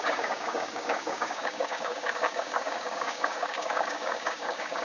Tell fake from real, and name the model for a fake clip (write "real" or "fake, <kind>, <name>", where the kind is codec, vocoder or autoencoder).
fake, codec, DAC